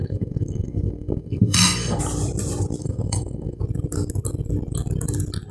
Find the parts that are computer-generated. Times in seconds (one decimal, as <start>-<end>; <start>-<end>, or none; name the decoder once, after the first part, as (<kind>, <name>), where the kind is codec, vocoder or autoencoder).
0.0-2.0 (codec, SNAC); 2.8-3.6